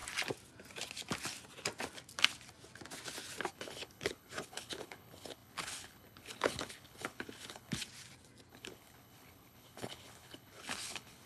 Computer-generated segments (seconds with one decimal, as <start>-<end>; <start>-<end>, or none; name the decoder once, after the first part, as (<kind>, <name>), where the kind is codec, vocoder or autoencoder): 3.5-7.8 (codec, HILCodec); 8.5-11.3